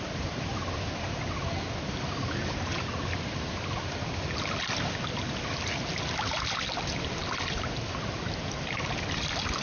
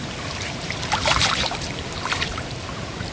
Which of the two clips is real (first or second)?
first